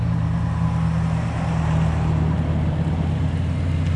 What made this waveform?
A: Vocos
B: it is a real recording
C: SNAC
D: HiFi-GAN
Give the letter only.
B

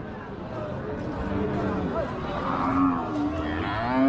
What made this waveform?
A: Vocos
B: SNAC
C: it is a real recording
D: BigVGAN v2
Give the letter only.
C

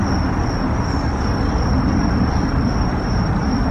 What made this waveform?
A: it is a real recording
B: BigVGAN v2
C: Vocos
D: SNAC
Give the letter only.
A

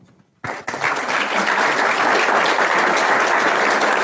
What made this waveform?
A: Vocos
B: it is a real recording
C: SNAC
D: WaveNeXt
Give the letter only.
B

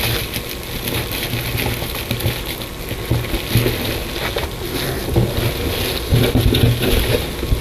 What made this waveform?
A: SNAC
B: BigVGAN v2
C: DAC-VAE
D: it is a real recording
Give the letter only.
D